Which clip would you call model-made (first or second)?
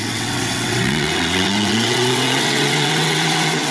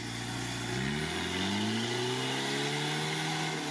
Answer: first